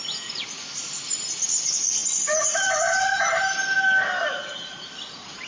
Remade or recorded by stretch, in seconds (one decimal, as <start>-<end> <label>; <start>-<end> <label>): 0.0-5.5 recorded